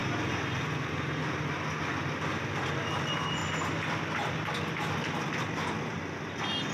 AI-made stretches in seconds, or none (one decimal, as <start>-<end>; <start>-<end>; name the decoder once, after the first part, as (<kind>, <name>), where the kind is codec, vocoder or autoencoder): 2.9-3.4 (vocoder, BigVGAN v2); 5.9-6.7